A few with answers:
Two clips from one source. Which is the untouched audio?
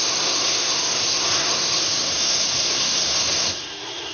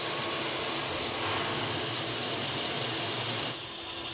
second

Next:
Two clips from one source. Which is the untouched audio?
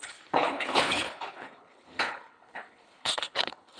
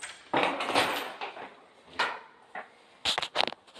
second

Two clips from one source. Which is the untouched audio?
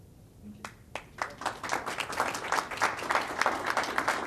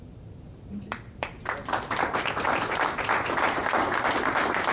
first